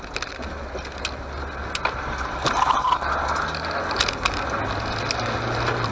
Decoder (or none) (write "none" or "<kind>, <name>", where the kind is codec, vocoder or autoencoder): none